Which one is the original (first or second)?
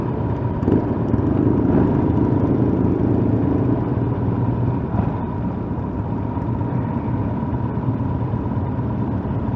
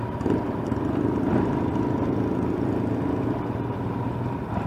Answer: second